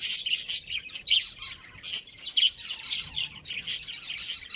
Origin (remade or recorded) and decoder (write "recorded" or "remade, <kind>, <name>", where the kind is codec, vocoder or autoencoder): recorded